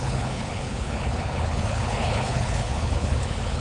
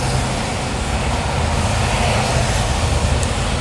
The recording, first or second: second